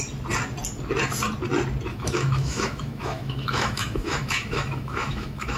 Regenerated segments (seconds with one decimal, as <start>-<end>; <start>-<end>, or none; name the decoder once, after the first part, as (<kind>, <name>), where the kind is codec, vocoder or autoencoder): 1.9-5.6 (autoencoder, DAC-VAE)